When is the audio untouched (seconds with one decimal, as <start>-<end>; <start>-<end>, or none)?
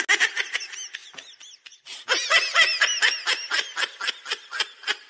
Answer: 0.0-5.1